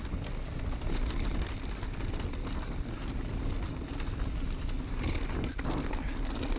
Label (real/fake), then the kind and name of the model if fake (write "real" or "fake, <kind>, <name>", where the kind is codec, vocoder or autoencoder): real